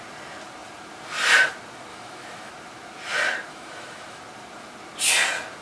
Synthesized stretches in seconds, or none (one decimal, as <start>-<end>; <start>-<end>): 1.9-2.5; 3.5-4.2